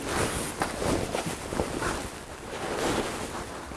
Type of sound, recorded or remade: recorded